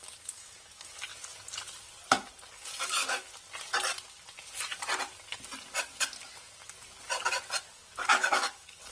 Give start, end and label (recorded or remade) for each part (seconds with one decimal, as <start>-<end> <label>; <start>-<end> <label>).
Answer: 0.0-1.1 remade; 1.1-2.5 recorded; 2.5-3.3 remade; 3.3-7.6 recorded; 7.6-8.9 remade